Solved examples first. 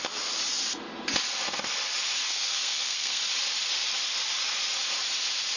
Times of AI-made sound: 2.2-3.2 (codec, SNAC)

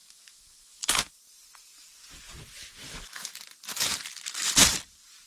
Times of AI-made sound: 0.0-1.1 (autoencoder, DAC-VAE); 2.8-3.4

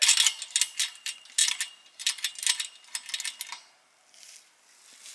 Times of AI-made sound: none

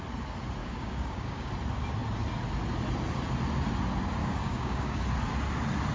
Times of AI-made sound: 0.6-1.5 (codec, DAC); 4.2-5.0